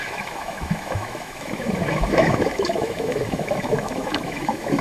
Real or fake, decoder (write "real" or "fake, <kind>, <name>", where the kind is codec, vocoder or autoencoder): fake, autoencoder, DAC-VAE